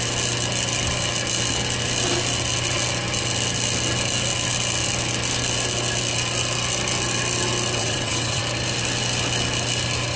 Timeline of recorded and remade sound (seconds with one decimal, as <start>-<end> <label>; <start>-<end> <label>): 0.0-7.8 recorded; 7.8-8.4 remade; 8.4-10.2 recorded